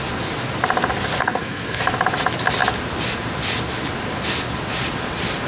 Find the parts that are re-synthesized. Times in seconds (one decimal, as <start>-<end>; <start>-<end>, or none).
1.2-1.8